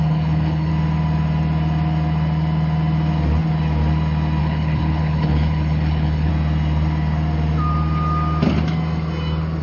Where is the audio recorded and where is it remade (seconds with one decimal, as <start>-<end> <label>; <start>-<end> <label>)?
0.0-0.7 remade; 0.7-4.4 recorded; 4.4-6.3 remade; 6.3-9.6 recorded